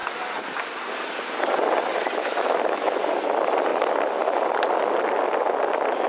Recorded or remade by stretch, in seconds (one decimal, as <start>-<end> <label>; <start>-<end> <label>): 0.0-2.2 recorded; 2.2-3.0 remade; 3.0-6.1 recorded